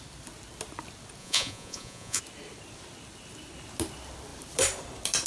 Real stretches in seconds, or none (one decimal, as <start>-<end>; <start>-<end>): 0.0-1.2; 2.2-5.3